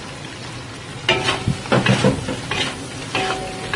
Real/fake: real